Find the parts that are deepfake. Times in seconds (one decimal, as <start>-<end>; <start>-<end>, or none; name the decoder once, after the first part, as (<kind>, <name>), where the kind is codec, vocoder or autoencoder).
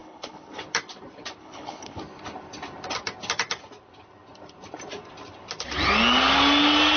0.0-0.6 (codec, HILCodec); 1.4-2.0